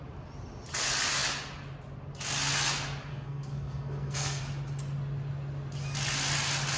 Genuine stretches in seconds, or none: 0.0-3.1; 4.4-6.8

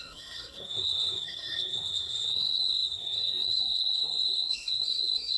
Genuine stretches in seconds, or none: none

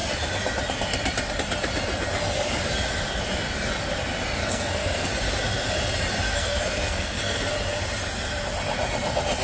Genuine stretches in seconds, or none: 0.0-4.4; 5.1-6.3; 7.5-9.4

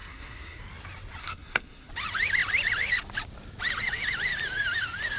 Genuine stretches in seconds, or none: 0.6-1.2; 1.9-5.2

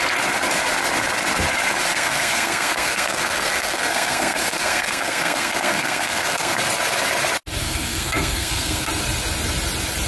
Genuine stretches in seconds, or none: 0.0-1.9; 6.6-7.6; 8.9-10.1

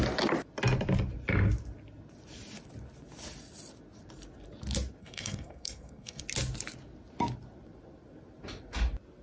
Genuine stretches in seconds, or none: 0.0-5.0; 6.2-9.2

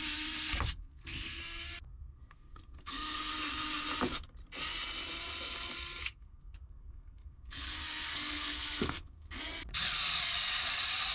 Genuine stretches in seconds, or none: 0.0-0.8; 1.4-1.9; 3.3-6.0; 9.4-11.1